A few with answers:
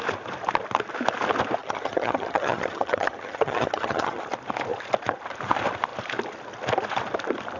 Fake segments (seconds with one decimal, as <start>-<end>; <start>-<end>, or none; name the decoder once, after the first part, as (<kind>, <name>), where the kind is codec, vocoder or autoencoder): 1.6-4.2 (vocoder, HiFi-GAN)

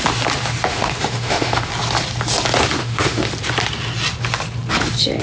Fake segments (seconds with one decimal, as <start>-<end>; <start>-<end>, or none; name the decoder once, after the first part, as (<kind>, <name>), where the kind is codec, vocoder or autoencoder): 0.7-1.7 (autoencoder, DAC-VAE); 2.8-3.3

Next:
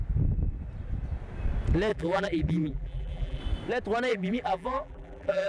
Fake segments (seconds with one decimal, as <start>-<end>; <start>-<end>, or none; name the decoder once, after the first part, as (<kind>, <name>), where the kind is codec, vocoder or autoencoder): 1.9-3.4 (vocoder, BigVGAN v2); 4.1-5.5

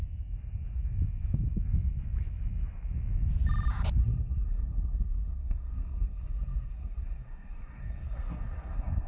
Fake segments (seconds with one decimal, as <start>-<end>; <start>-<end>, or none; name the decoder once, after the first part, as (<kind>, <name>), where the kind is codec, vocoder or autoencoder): 4.0-9.1 (codec, SNAC)